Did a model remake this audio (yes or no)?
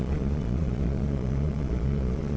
yes